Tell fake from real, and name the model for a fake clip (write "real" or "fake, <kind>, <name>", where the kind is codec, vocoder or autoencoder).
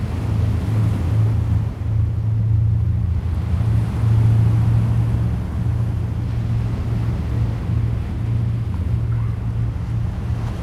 real